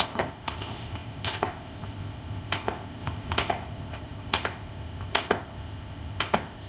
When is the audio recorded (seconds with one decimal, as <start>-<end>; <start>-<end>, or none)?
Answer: none